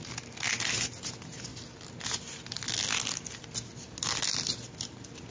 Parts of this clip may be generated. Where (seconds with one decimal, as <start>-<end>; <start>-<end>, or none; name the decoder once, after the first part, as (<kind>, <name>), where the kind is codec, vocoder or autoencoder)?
none